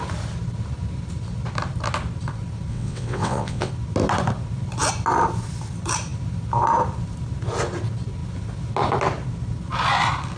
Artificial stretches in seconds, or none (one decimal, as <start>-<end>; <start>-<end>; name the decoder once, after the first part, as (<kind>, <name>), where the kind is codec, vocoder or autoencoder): 2.7-3.7 (vocoder, WaveNeXt)

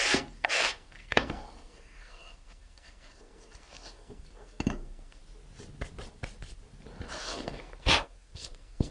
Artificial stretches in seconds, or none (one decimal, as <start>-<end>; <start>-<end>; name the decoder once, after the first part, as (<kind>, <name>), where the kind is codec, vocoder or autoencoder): 0.0-5.2 (codec, SNAC); 7.2-8.9